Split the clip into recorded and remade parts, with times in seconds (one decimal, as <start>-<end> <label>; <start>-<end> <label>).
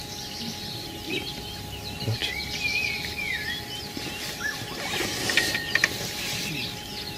0.0-7.2 recorded